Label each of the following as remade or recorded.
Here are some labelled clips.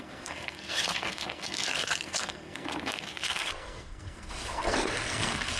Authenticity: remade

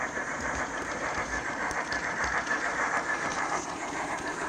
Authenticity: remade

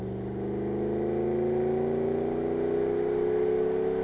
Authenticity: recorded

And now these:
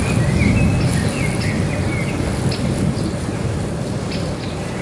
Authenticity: recorded